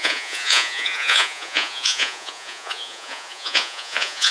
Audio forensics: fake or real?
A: fake